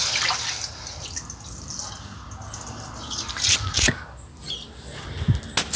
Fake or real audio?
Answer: real